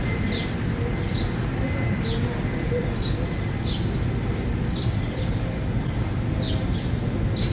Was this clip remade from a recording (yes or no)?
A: no